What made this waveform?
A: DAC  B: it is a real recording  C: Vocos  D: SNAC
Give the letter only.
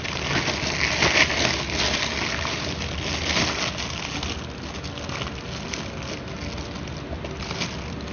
B